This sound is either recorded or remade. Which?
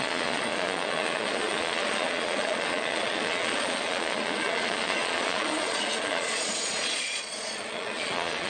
remade